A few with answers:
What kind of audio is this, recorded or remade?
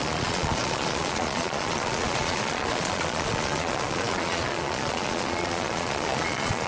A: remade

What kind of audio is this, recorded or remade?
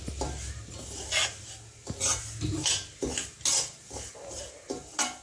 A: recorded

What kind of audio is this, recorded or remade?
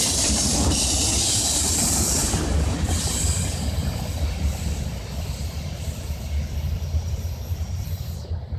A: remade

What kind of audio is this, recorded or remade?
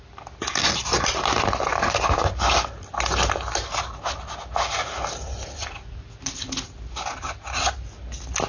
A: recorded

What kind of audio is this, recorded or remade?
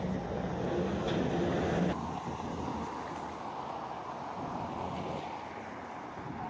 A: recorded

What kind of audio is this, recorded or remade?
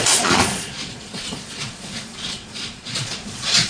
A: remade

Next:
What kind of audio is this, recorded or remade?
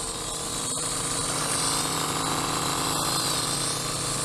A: recorded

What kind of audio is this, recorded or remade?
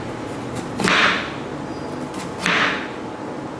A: recorded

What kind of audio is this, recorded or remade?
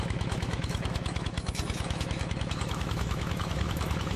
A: remade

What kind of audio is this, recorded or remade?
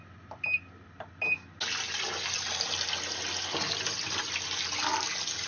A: recorded